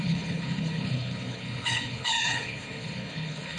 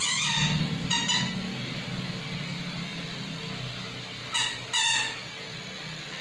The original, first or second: second